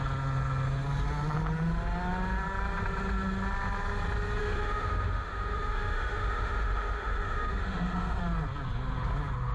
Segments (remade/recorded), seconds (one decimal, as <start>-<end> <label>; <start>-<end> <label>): 0.0-4.4 recorded; 4.4-8.2 remade; 8.2-9.5 recorded